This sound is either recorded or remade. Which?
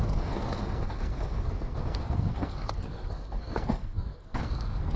remade